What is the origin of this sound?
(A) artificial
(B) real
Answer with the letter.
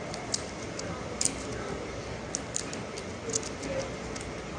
B